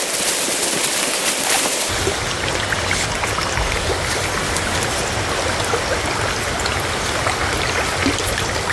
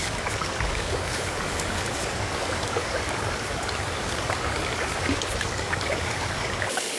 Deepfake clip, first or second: second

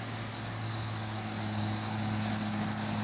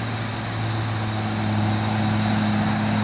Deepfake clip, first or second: first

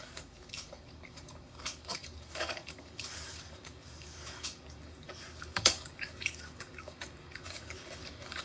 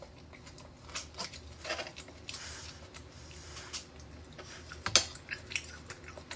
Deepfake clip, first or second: first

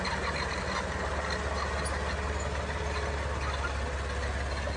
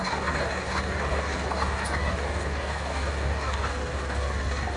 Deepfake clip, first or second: second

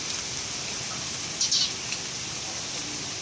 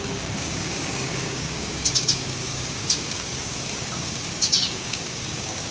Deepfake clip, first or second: second